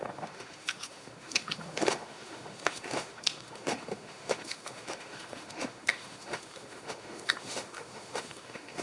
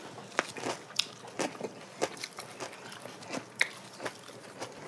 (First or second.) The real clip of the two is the second